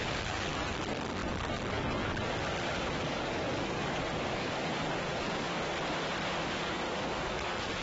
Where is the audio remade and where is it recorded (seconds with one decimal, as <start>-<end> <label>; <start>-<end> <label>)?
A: 0.0-2.3 remade; 2.3-2.9 recorded; 2.9-5.7 remade; 5.7-6.4 recorded; 6.4-7.8 remade